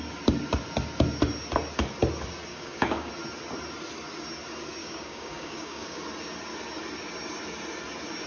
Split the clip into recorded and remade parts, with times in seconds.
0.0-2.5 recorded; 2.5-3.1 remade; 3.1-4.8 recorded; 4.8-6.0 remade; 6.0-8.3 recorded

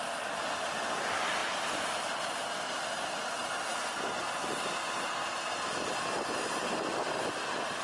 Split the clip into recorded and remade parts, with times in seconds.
0.0-7.8 recorded

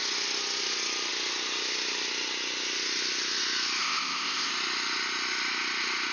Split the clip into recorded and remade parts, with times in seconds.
0.0-3.8 recorded; 3.8-4.5 remade; 4.5-6.1 recorded

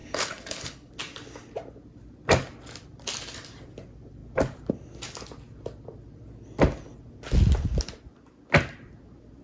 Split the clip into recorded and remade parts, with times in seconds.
0.0-0.9 remade; 0.9-9.4 recorded

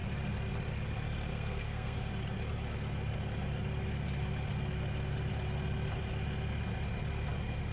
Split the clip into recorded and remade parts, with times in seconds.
0.0-1.3 recorded; 1.3-2.1 remade; 2.1-7.7 recorded

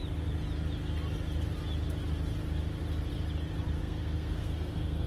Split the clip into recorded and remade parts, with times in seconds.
0.0-3.8 recorded; 3.8-5.1 remade

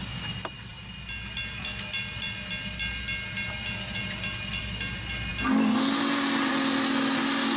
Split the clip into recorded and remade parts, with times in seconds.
0.0-7.6 recorded

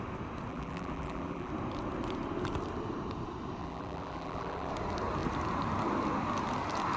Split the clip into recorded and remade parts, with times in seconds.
0.0-0.5 recorded; 0.5-1.5 remade; 1.5-3.6 recorded; 3.6-4.7 remade; 4.7-7.0 recorded